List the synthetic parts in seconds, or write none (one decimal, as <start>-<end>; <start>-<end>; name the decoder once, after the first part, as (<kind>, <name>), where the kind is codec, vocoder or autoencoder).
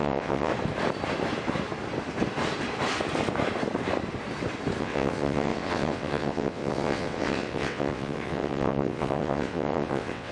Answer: 0.0-0.5 (vocoder, WaveNeXt); 4.8-10.3